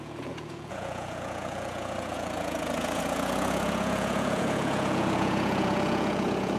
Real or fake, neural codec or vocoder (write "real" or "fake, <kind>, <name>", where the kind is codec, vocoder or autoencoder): fake, vocoder, Vocos